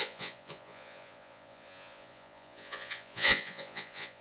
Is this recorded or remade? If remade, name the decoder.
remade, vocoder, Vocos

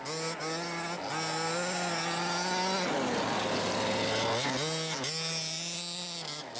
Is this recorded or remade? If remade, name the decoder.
recorded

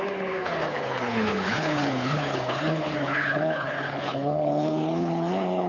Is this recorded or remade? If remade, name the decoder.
remade, codec, HILCodec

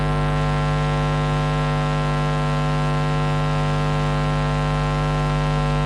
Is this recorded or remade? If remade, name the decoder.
recorded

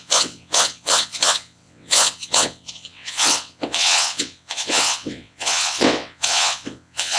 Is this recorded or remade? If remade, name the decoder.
remade, vocoder, WaveNeXt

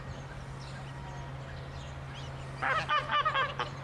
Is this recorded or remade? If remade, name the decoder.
recorded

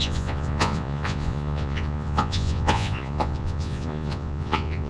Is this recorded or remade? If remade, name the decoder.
remade, vocoder, Vocos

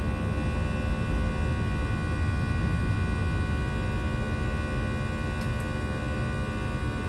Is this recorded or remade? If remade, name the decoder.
recorded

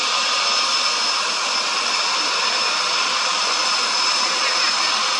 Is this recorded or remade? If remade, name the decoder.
recorded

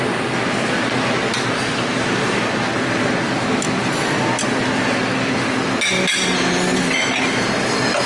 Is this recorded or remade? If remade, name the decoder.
recorded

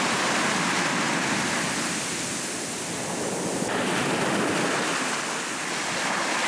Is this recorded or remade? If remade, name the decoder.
recorded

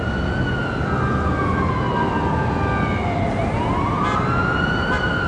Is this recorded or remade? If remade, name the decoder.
recorded